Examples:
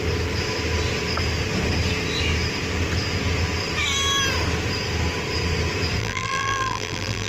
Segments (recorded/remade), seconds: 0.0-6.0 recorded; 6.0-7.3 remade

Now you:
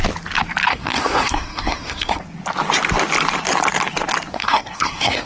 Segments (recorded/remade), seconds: 0.0-0.7 recorded; 0.7-2.2 remade; 2.2-4.3 recorded; 4.3-5.3 remade

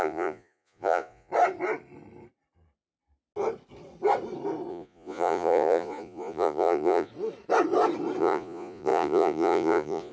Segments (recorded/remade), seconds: 0.0-1.3 remade; 1.3-4.7 recorded; 4.7-7.1 remade; 7.1-8.2 recorded; 8.2-10.1 remade

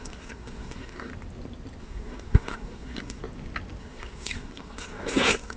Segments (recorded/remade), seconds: 0.0-1.1 remade; 1.1-1.8 recorded; 1.8-3.2 remade; 3.2-3.8 recorded; 3.8-5.6 remade

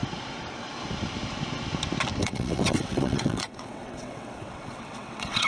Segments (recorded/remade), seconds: 0.0-2.2 recorded; 2.2-5.5 remade

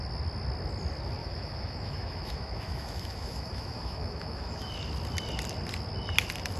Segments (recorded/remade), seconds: 0.0-1.2 recorded; 1.2-4.7 remade; 4.7-6.6 recorded

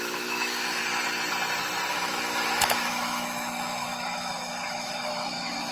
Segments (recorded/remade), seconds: 0.0-0.8 remade; 0.8-1.9 recorded; 1.9-5.7 remade

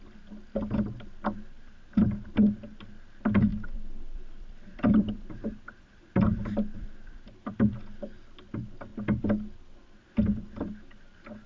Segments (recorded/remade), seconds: 0.0-3.5 recorded; 3.5-7.5 remade; 7.5-11.5 recorded